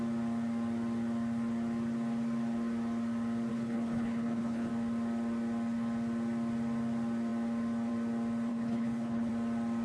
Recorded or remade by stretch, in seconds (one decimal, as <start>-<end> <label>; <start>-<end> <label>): 0.0-3.5 recorded; 3.5-4.7 remade; 4.7-8.5 recorded; 8.5-9.3 remade; 9.3-9.8 recorded